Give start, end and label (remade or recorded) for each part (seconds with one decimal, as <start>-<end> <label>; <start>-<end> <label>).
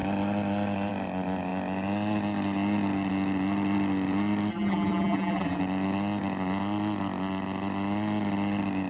0.0-4.5 recorded; 4.5-5.6 remade; 5.6-8.9 recorded